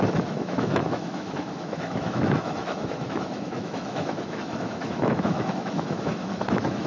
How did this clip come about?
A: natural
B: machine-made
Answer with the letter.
B